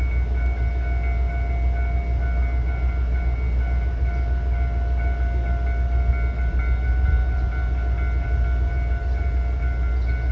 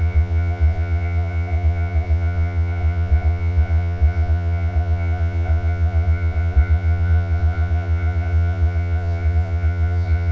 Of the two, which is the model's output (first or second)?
second